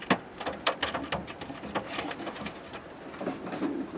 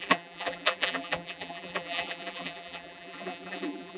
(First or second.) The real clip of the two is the first